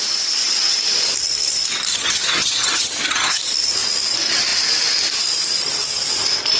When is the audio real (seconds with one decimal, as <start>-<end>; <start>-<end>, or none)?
0.0-1.9; 3.4-6.6